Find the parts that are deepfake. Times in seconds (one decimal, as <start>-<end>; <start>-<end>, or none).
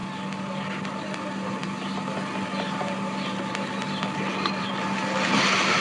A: none